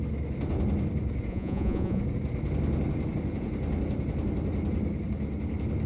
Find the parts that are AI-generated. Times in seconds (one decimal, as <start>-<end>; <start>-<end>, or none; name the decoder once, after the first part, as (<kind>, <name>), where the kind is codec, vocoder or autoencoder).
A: 1.3-2.0 (vocoder, Vocos)